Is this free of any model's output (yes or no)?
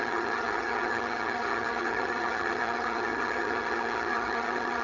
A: no